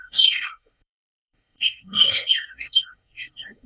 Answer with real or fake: fake